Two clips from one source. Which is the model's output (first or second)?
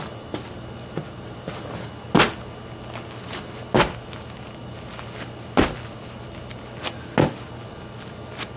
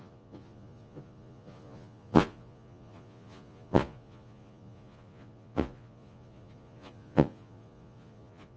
second